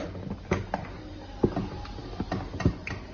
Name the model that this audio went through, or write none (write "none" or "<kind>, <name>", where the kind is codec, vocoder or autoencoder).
none